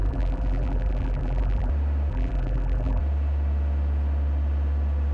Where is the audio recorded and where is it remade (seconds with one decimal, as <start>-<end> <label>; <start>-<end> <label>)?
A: 0.0-1.7 remade; 1.7-2.1 recorded; 2.1-3.0 remade; 3.0-5.1 recorded